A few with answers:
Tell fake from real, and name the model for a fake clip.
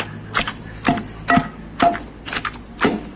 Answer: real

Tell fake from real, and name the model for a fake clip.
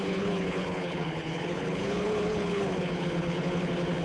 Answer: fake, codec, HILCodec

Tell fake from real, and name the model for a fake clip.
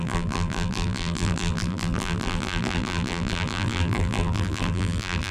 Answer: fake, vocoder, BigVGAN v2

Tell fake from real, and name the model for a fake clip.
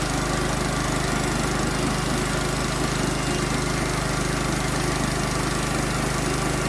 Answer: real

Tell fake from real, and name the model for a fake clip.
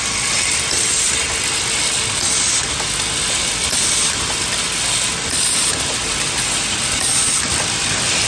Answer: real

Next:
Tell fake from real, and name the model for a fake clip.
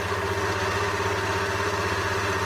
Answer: real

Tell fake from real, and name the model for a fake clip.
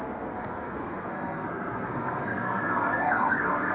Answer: fake, codec, SNAC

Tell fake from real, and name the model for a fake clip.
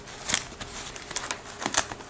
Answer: real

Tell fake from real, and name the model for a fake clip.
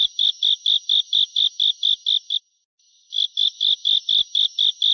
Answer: real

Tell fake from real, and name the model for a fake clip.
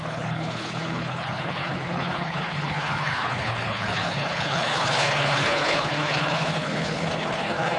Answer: fake, codec, HILCodec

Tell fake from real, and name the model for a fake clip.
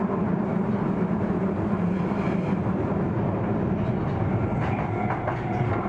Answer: real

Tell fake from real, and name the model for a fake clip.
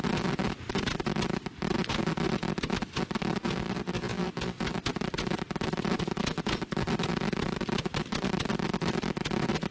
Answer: real